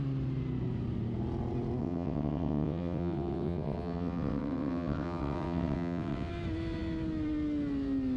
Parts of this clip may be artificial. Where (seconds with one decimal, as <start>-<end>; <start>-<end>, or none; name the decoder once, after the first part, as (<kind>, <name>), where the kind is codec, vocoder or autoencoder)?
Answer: 1.8-6.3 (vocoder, WaveNeXt)